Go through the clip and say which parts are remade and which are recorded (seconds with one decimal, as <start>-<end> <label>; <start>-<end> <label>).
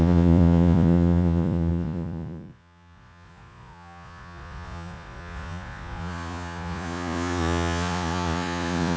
0.0-9.0 remade